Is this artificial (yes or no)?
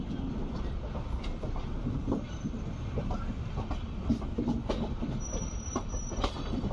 yes